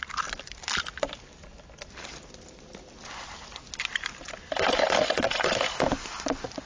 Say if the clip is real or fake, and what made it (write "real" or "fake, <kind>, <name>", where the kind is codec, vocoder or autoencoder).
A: real